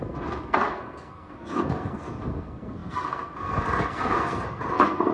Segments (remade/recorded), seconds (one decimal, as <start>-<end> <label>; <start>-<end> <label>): 0.0-5.1 remade